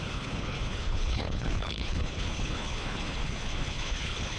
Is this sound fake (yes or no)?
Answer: yes